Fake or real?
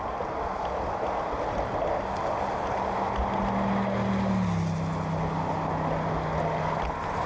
real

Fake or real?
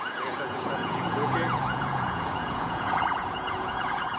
fake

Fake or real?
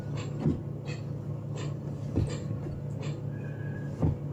real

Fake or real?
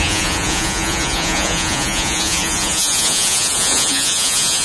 fake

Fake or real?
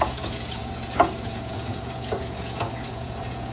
fake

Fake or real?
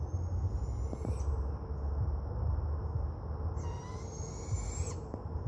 real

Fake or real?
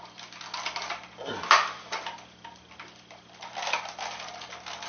real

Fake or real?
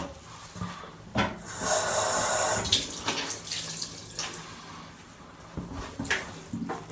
real